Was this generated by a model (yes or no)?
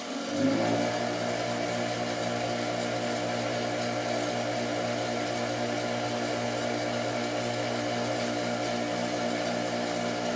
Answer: no